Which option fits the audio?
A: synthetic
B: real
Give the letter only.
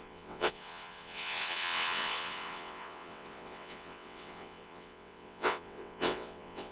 A